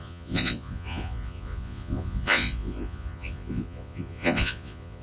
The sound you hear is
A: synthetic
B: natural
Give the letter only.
A